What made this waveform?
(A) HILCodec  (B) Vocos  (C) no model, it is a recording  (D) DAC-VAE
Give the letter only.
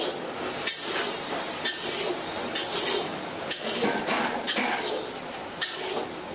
C